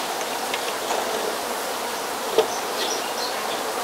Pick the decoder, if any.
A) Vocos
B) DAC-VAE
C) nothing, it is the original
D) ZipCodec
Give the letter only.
C